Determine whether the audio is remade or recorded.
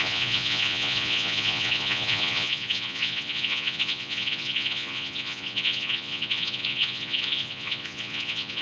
remade